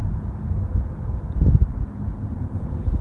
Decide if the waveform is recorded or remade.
remade